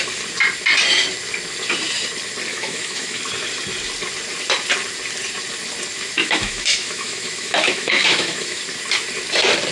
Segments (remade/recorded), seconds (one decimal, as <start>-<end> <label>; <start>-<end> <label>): 0.0-2.5 recorded; 2.5-3.2 remade; 3.2-6.2 recorded; 6.2-8.6 remade; 8.6-9.7 recorded